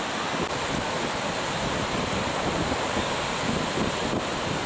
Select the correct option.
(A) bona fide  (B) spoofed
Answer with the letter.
A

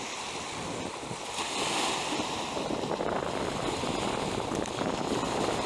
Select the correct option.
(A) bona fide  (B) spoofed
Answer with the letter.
A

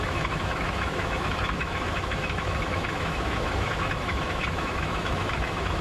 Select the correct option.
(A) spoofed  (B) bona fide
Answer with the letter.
A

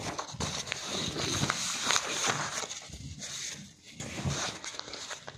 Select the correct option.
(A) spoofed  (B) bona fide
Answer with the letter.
B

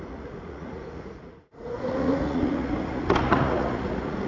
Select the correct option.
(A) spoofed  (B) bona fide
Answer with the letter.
A